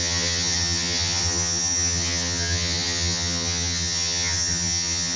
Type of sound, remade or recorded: remade